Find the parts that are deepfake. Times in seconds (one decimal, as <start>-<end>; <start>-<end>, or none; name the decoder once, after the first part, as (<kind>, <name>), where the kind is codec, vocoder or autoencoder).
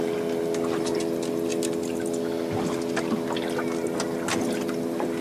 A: none